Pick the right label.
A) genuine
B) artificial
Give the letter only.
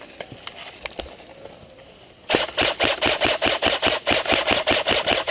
A